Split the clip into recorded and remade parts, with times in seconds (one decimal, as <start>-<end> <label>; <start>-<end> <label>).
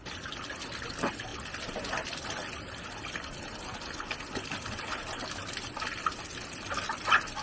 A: 0.0-7.4 recorded